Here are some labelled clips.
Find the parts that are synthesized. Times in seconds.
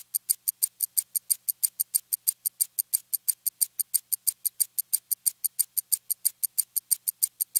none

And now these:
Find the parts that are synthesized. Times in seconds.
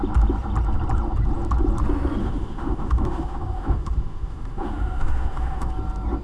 2.2-5.7 (autoencoder, DAC-VAE)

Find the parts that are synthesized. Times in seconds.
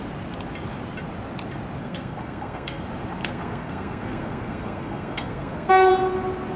1.8-2.8 (codec, SNAC); 3.2-5.9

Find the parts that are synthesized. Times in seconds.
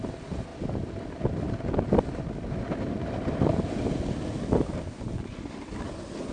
none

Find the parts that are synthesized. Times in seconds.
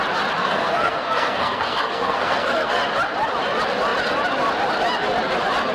0.4-2.8 (codec, SNAC)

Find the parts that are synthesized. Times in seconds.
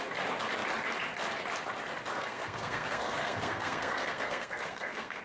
2.1-5.2 (codec, SNAC)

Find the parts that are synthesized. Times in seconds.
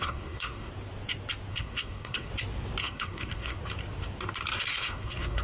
0.0-0.7 (codec, SNAC); 1.5-2.3; 2.8-3.6; 4.7-5.4